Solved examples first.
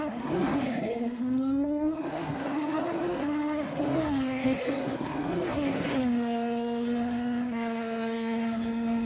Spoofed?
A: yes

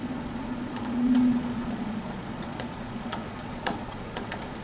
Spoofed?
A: yes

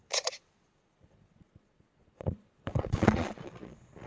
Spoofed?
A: yes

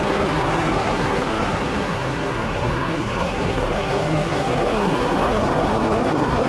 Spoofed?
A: yes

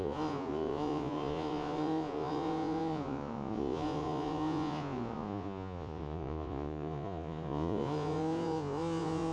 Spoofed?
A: yes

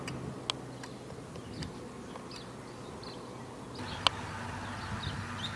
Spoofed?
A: no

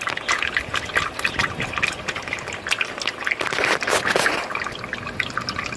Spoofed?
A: no